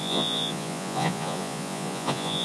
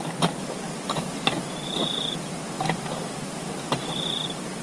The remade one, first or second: first